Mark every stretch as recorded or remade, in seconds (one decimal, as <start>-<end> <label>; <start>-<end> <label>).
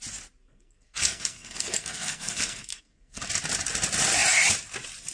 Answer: 0.0-0.4 recorded; 0.4-3.2 remade; 3.2-5.1 recorded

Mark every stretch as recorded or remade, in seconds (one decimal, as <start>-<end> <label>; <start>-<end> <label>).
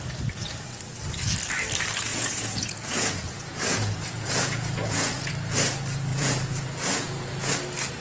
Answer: 0.0-2.1 recorded; 2.1-5.3 remade; 5.3-6.1 recorded; 6.1-7.5 remade; 7.5-8.0 recorded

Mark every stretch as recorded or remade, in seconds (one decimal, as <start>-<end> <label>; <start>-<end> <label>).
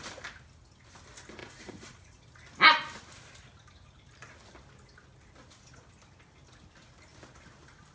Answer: 0.0-1.4 recorded; 1.4-2.3 remade; 2.3-7.9 recorded